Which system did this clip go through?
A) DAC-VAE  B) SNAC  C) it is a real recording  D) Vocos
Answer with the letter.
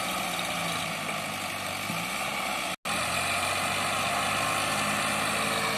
C